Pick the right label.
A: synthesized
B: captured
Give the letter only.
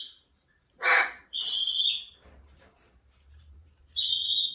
A